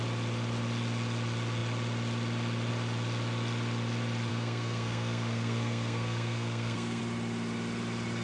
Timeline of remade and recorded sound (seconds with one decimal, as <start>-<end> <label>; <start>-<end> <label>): 0.0-4.3 recorded; 4.3-7.0 remade; 7.0-8.2 recorded